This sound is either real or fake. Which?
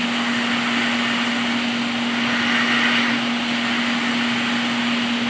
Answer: real